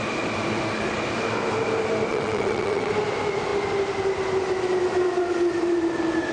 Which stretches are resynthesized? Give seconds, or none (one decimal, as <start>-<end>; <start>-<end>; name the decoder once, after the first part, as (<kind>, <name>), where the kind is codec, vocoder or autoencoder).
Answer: 2.1-2.9 (vocoder, WaveNeXt)